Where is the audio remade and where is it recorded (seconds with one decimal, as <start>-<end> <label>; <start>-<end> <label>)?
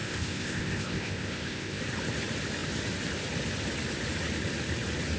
0.0-1.8 remade; 1.8-5.2 recorded